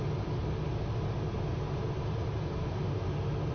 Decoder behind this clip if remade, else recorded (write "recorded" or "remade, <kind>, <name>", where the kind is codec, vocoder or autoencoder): recorded